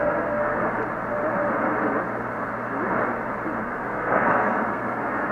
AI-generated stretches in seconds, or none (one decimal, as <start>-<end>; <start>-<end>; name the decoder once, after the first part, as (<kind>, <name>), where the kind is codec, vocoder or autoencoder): 0.0-0.6 (codec, SNAC); 3.6-5.3